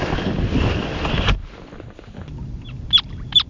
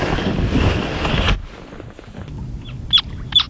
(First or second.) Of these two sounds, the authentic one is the second